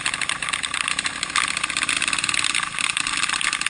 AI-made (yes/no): no